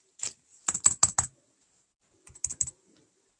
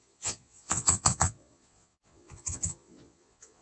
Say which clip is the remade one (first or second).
second